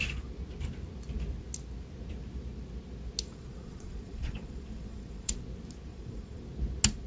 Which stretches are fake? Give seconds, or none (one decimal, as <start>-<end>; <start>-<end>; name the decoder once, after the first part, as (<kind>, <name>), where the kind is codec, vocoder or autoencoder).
3.3-5.3 (vocoder, Vocos); 5.9-6.4